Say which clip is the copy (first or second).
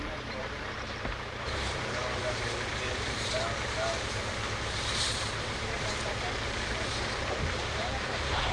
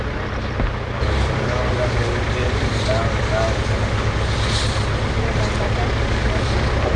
first